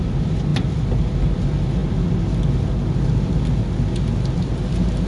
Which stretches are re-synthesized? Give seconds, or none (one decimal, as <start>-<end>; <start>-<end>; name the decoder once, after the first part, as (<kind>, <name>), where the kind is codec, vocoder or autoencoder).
none